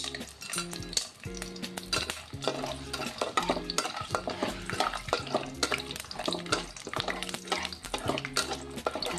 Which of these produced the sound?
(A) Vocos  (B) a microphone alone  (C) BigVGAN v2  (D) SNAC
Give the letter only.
B